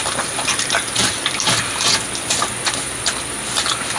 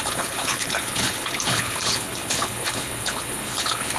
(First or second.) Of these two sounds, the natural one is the first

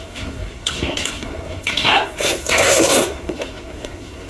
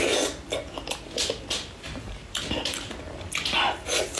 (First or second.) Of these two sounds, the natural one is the second